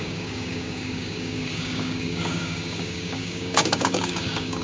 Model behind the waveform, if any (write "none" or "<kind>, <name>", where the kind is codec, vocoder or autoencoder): codec, DAC